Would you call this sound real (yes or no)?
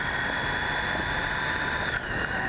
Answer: yes